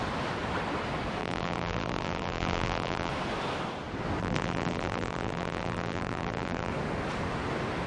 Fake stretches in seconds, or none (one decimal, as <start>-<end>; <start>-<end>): 1.2-3.1; 4.2-6.7